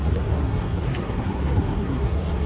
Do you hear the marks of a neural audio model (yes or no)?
yes